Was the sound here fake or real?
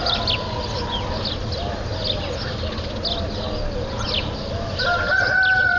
real